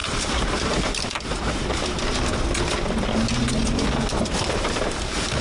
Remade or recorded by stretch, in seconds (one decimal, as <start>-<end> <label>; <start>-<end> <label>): 0.0-2.0 remade; 2.0-4.4 recorded; 4.4-5.4 remade